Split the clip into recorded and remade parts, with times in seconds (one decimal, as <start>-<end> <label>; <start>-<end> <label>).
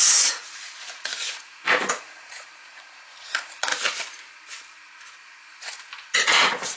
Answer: 0.0-3.7 remade; 3.7-6.1 recorded; 6.1-6.8 remade